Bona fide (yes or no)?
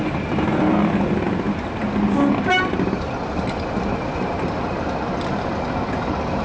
yes